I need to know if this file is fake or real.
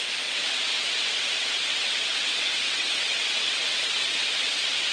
fake